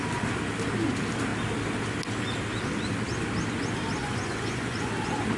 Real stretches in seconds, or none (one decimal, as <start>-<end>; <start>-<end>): 0.0-4.0; 4.9-5.4